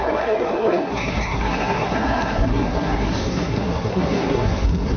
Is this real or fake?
fake